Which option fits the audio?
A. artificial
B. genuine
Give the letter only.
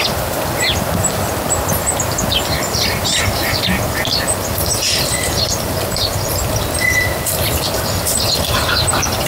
A